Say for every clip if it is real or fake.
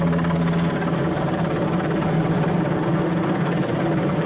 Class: real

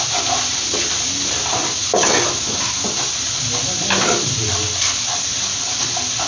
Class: real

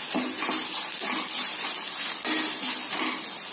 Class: real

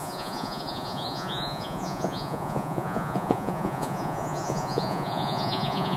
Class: fake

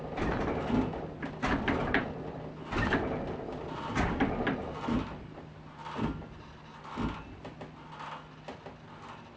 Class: real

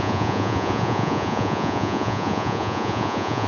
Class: fake